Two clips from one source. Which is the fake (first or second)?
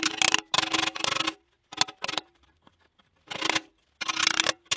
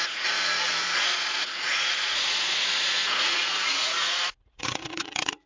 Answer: second